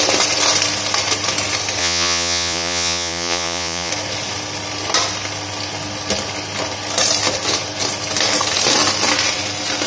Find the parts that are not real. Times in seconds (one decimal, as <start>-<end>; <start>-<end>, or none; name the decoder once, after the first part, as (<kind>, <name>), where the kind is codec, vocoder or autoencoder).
1.8-3.9 (vocoder, Vocos)